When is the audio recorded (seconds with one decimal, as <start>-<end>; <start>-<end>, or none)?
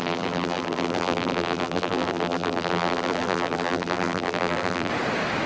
4.9-5.5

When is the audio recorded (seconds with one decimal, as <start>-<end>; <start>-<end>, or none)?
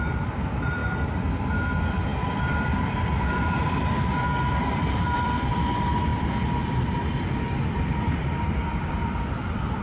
0.8-1.4; 6.1-7.9